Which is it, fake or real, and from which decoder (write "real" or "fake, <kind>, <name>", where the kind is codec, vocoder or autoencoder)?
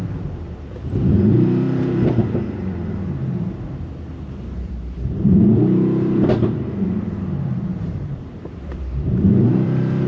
fake, vocoder, BigVGAN v2